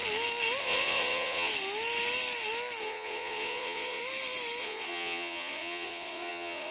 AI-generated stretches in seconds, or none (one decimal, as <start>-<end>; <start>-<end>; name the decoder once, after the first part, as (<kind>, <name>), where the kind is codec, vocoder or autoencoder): 0.6-1.5 (vocoder, Vocos); 2.8-4.0; 4.6-6.7